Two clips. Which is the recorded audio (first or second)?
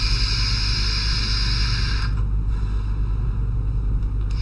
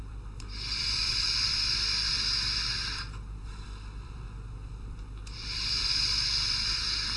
first